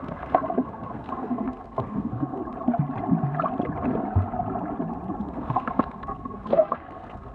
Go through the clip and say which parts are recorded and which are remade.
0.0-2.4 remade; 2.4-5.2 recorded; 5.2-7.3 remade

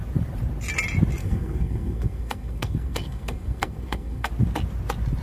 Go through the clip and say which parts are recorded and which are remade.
0.0-1.2 recorded; 1.2-4.3 remade; 4.3-5.2 recorded

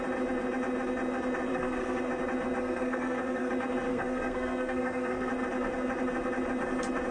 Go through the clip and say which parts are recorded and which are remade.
0.0-1.5 recorded; 1.5-2.0 remade; 2.0-2.6 recorded; 2.6-3.5 remade; 3.5-3.9 recorded; 3.9-5.3 remade; 5.3-7.1 recorded